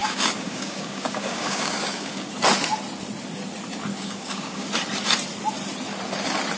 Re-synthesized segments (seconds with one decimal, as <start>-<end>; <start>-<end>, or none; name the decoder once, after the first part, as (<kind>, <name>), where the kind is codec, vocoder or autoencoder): 0.0-2.3 (codec, DAC); 3.9-4.7